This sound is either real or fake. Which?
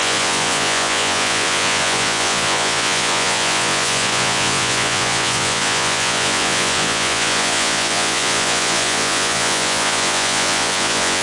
fake